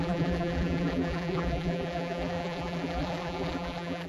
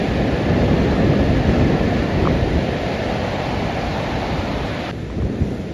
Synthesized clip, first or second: first